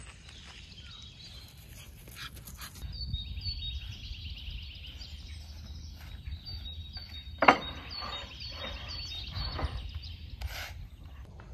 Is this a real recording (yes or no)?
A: yes